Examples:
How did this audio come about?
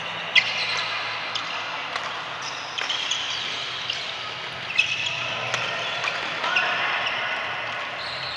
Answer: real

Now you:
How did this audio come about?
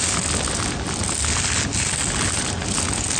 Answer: real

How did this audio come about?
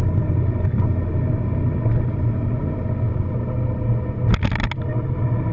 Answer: real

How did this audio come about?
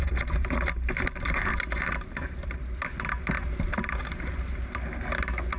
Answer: real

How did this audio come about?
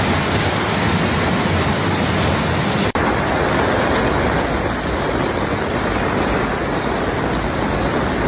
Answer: real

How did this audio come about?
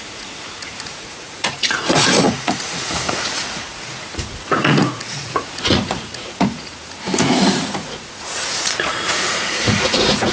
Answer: fake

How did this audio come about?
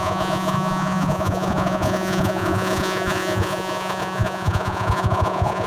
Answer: fake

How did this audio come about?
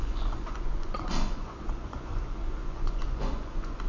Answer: fake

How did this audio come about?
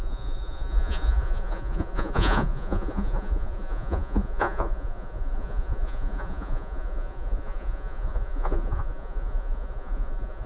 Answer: fake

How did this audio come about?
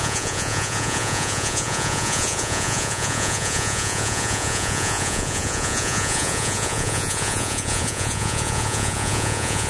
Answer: fake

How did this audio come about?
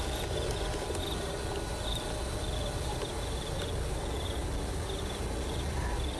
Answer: real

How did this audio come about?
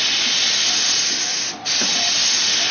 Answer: real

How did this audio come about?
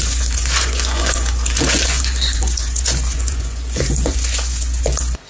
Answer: fake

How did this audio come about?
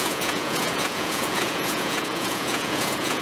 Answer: fake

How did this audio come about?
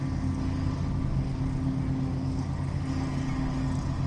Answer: real